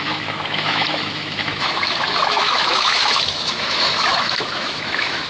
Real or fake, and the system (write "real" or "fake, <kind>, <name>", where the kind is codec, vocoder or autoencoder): fake, autoencoder, DAC-VAE